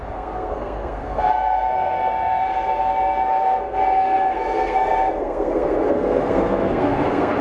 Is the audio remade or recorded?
remade